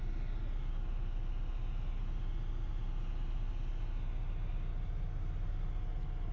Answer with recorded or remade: recorded